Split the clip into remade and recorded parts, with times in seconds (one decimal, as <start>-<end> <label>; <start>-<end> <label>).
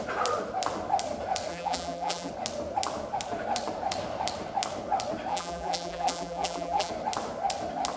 0.0-1.5 recorded; 1.5-2.3 remade; 2.3-5.3 recorded; 5.3-6.9 remade; 6.9-8.0 recorded